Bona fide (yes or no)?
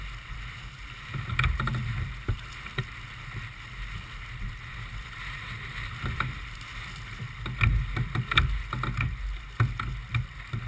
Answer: yes